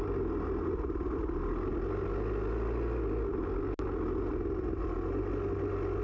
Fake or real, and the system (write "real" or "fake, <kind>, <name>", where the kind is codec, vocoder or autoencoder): real